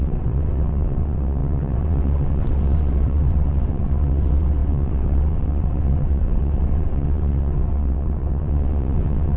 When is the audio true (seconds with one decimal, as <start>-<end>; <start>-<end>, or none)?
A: none